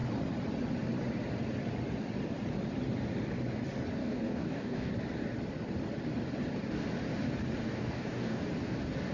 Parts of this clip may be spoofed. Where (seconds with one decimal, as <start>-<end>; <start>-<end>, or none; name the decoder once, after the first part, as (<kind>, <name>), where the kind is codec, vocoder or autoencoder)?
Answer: 4.0-4.9 (codec, DAC); 7.6-8.4